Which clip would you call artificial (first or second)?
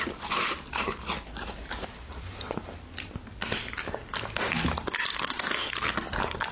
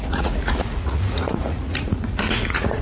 second